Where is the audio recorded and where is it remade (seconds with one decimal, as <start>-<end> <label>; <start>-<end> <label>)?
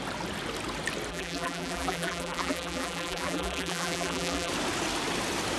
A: 0.0-1.1 recorded; 1.1-4.5 remade; 4.5-5.6 recorded